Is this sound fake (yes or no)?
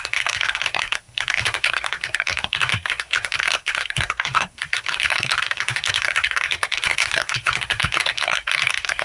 yes